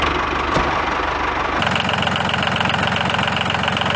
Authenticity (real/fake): real